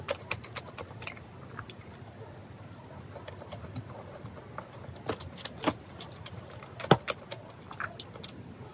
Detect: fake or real real